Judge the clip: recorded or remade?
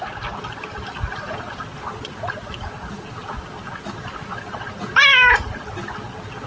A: recorded